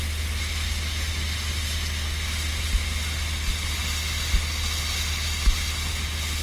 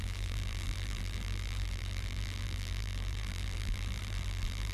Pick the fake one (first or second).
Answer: second